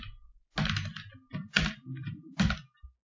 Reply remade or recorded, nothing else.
recorded